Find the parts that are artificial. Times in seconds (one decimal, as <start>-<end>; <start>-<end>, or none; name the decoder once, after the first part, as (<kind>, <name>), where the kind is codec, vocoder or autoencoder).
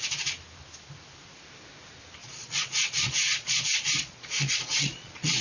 2.2-5.4 (vocoder, Vocos)